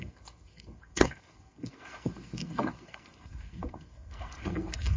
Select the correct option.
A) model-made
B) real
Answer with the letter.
A